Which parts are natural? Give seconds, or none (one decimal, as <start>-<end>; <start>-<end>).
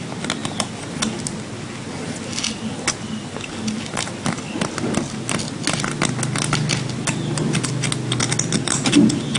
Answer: 0.0-9.4